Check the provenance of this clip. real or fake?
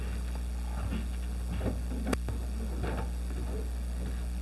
real